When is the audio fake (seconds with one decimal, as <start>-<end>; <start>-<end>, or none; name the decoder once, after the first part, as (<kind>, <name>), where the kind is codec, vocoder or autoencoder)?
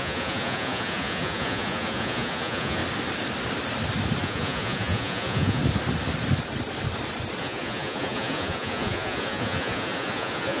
0.0-2.8 (vocoder, Vocos); 4.2-5.6; 7.4-10.6